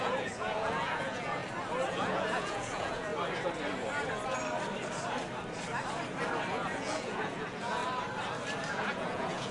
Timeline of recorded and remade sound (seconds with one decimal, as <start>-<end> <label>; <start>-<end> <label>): 0.0-1.4 remade; 1.4-1.9 recorded; 1.9-3.1 remade; 3.1-6.5 recorded; 6.5-7.8 remade; 7.8-8.7 recorded; 8.7-9.5 remade